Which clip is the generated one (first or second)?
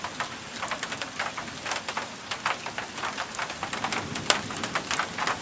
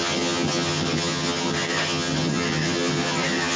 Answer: second